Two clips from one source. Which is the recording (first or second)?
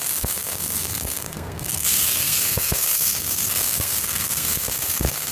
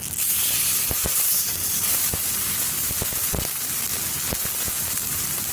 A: second